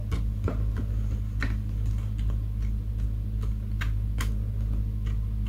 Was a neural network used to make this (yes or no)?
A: no